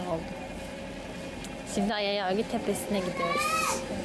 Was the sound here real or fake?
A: real